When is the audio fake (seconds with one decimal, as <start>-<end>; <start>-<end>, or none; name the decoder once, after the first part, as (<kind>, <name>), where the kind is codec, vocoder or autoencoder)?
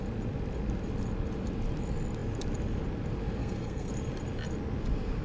3.4-3.9 (codec, SNAC)